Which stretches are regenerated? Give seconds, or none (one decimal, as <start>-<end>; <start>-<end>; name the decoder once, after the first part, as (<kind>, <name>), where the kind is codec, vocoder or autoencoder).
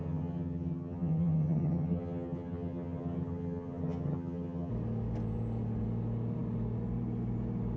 0.0-4.7 (vocoder, HiFi-GAN)